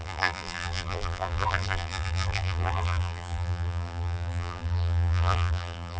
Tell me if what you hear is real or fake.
fake